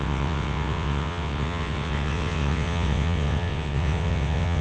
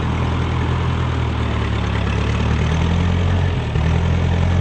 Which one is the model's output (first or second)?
first